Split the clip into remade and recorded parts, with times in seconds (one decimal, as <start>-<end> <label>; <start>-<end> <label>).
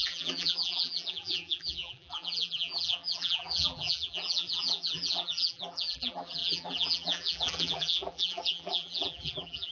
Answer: 0.0-9.7 remade